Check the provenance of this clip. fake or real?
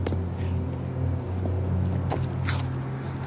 real